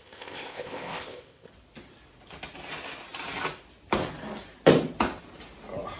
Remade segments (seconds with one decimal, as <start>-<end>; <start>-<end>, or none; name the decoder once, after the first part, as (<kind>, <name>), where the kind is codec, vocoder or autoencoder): 0.0-1.5 (codec, ZipCodec)